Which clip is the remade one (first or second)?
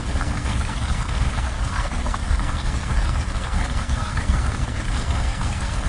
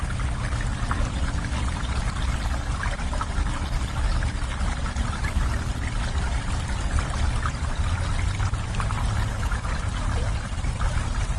first